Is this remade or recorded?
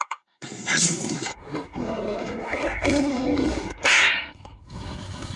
remade